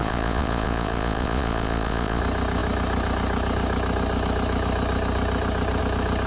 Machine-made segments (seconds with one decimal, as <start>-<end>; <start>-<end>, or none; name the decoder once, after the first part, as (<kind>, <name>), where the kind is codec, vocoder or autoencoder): 0.0-2.2 (vocoder, Vocos)